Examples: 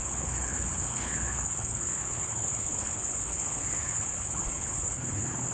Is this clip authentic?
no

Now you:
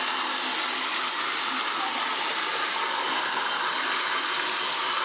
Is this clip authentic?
yes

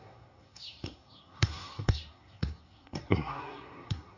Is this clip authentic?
no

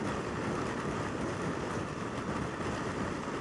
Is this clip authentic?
yes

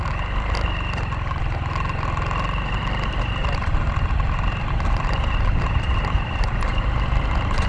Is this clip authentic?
yes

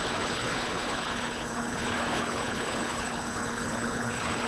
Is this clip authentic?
no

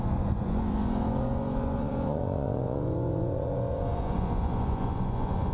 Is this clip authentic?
no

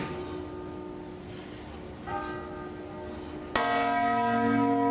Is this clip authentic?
yes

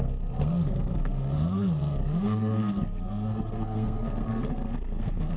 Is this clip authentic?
no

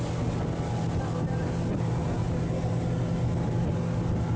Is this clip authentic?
yes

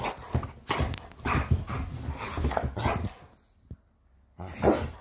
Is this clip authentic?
yes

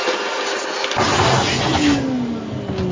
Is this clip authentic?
yes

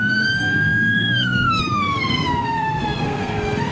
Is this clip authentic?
no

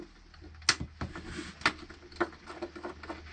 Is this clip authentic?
yes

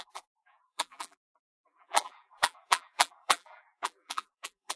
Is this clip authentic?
no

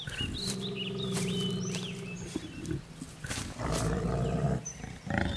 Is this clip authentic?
no